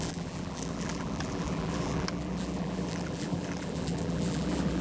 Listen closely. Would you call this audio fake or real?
fake